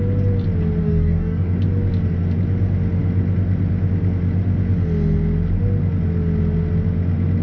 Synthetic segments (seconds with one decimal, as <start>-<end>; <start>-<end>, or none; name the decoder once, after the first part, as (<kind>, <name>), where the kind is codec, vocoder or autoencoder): 0.8-1.5 (codec, DAC)